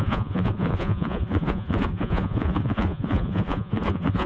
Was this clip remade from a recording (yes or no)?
yes